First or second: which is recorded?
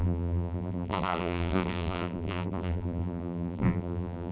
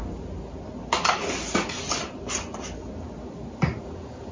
second